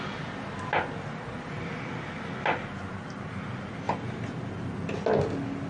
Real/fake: real